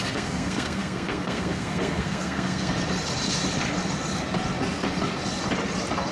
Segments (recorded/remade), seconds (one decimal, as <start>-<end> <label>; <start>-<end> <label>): 0.0-2.7 remade; 2.7-6.1 recorded